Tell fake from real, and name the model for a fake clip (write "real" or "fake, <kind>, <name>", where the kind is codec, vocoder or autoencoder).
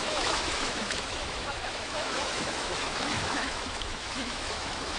fake, autoencoder, DAC-VAE